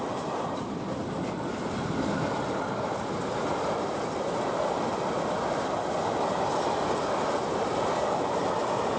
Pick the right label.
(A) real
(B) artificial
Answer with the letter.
A